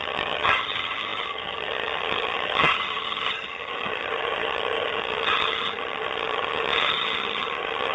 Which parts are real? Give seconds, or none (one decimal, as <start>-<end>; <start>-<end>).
none